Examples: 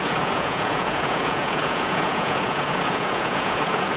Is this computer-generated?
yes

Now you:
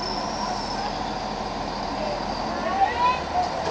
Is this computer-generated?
no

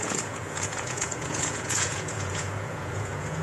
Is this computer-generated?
yes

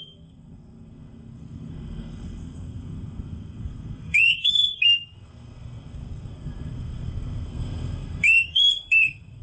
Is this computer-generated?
yes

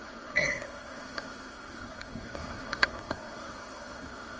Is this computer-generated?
yes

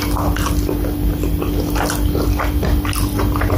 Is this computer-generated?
no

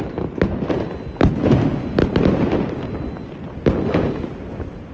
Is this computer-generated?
no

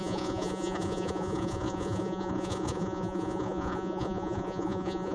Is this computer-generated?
yes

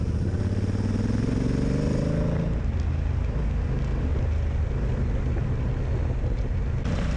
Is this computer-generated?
no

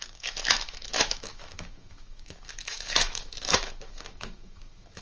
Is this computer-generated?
yes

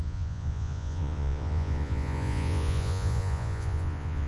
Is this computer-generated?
yes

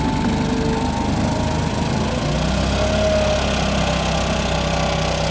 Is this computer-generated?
no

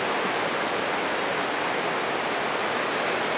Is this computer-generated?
no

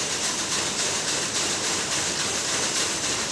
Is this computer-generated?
yes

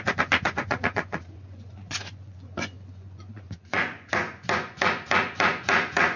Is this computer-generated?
yes